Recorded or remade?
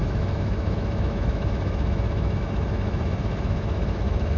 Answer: remade